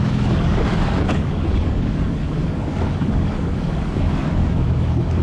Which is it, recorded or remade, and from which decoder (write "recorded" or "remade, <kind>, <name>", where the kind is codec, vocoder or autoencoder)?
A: remade, codec, DAC